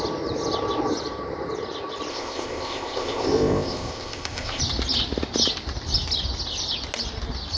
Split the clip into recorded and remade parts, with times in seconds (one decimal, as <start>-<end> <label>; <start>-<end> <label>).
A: 0.0-2.1 recorded; 2.1-4.6 remade; 4.6-7.6 recorded